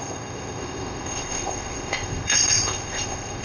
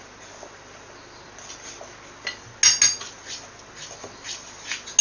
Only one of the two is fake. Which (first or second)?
first